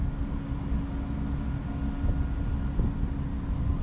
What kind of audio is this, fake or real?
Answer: real